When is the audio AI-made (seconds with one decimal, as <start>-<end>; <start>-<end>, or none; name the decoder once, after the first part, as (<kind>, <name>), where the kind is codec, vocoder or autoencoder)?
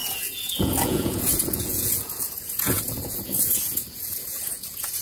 0.0-5.0 (vocoder, Vocos)